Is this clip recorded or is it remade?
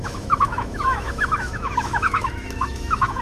remade